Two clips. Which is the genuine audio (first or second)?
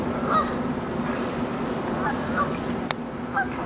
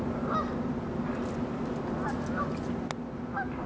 second